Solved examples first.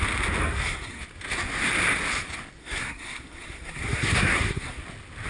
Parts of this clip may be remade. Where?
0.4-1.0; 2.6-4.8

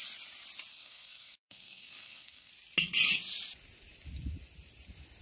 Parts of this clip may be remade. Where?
0.7-2.5